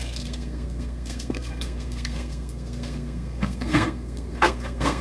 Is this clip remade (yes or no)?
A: yes